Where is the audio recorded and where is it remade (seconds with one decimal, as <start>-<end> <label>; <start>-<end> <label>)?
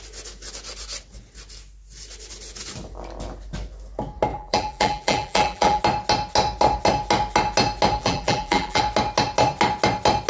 0.0-4.3 recorded; 4.3-5.8 remade; 5.8-8.0 recorded; 8.0-8.8 remade; 8.8-10.3 recorded